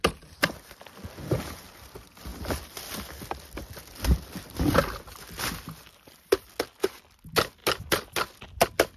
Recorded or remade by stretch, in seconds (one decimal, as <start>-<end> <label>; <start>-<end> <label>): 0.0-9.0 recorded